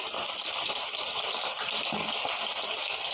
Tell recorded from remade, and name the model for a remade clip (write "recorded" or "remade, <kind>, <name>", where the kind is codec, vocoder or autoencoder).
recorded